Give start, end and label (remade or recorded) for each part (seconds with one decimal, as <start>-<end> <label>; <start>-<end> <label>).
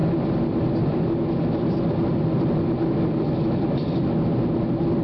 0.0-5.0 recorded